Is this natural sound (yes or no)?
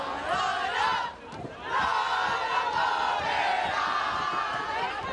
yes